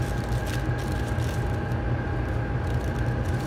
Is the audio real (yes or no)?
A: yes